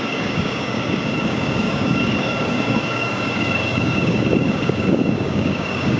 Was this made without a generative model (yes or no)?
no